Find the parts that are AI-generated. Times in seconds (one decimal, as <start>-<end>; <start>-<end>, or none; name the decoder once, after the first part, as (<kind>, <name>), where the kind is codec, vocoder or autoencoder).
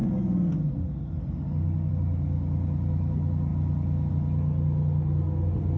none